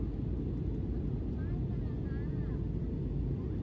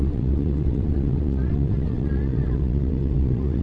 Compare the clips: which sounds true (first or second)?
first